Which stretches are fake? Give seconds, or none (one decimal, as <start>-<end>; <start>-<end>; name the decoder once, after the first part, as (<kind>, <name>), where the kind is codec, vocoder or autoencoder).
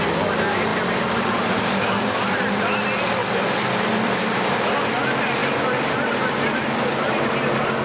0.7-2.6 (vocoder, BigVGAN v2); 3.2-4.9; 5.4-7.3